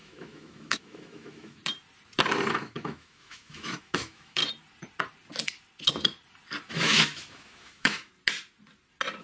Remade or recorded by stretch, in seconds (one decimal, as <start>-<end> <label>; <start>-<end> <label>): 0.0-1.6 remade; 1.6-2.5 recorded; 2.5-4.4 remade; 4.4-6.7 recorded; 6.7-8.1 remade; 8.1-9.2 recorded